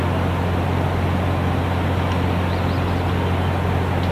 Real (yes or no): yes